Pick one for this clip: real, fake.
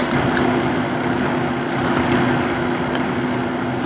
real